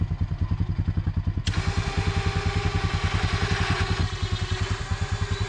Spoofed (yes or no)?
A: no